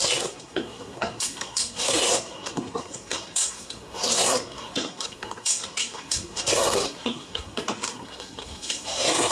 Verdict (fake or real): fake